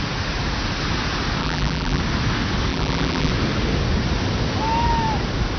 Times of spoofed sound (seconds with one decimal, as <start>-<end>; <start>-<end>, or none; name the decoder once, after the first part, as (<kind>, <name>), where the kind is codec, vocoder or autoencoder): 1.4-2.0 (vocoder, BigVGAN v2); 2.7-3.3